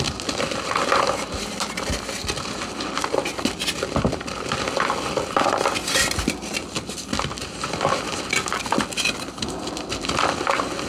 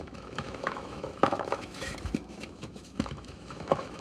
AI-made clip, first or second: second